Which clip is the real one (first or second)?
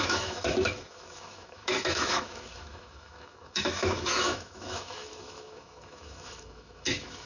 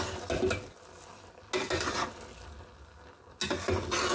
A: second